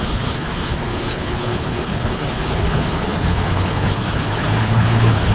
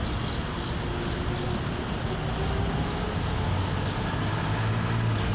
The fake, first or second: first